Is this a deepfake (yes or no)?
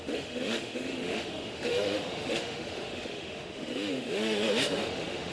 yes